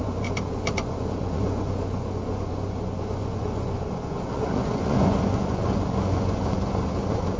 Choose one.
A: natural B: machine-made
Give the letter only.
B